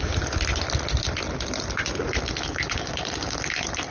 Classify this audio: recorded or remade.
recorded